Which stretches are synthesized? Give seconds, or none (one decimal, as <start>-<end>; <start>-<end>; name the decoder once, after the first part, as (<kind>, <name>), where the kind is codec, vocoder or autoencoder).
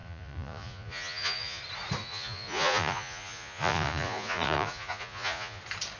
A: 0.0-1.6 (vocoder, Vocos); 2.0-5.6